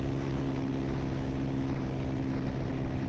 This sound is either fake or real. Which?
real